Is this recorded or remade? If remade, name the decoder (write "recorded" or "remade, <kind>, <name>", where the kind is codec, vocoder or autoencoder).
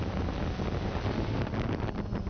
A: recorded